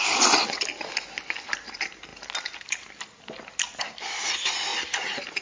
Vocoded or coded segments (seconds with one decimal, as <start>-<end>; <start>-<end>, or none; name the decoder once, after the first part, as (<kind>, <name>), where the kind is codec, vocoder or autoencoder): none